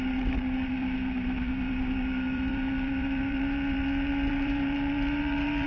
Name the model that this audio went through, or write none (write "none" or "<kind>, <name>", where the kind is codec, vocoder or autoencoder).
vocoder, BigVGAN v2